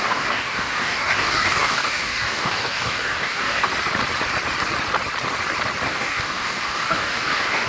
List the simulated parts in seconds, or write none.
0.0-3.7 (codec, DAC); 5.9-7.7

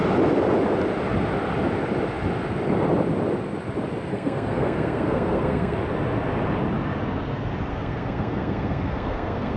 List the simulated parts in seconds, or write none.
4.1-5.8 (codec, SNAC); 7.7-9.6

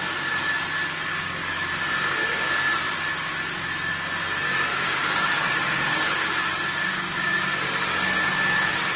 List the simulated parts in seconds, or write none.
1.1-1.7 (codec, DAC); 4.7-6.5; 6.9-7.4

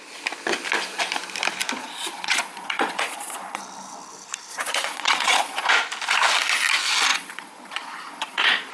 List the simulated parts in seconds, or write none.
1.8-3.6 (vocoder, Vocos); 4.5-5.7; 7.1-8.7